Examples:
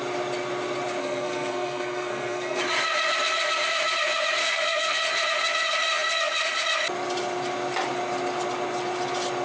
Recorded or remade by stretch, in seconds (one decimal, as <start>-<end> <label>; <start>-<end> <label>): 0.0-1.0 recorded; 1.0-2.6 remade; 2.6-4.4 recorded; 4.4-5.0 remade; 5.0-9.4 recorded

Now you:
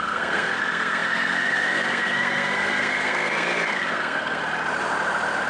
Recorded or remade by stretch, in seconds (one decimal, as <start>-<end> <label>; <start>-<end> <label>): 0.0-4.4 remade; 4.4-5.5 recorded

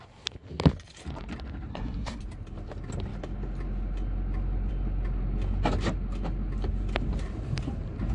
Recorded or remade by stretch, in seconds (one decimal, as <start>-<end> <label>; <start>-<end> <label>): 0.0-1.7 recorded; 1.7-2.2 remade; 2.2-8.1 recorded

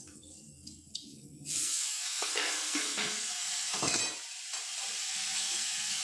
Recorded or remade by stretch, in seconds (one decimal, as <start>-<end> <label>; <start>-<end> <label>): 0.0-4.0 remade; 4.0-5.0 recorded; 5.0-6.0 remade